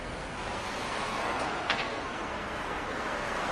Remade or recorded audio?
remade